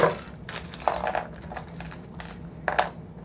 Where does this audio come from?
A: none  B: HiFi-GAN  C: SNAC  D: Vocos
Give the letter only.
A